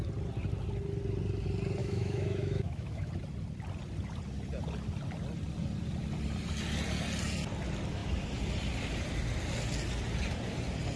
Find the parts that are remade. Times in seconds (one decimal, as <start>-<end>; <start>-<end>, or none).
1.8-3.1